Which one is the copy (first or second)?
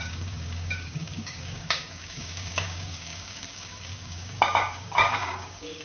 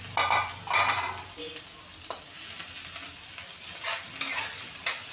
first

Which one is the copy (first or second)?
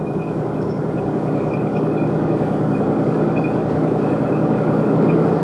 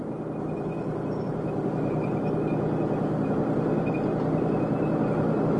first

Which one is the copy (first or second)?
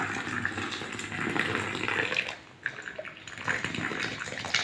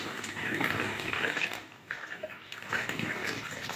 second